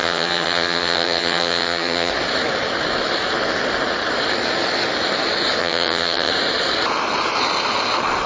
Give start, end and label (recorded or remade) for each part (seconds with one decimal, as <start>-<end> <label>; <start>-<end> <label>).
0.0-2.1 remade; 2.1-5.6 recorded; 5.6-6.3 remade; 6.3-8.3 recorded